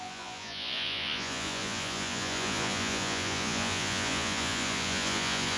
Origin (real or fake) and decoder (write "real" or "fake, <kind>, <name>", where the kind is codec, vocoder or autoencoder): fake, vocoder, Vocos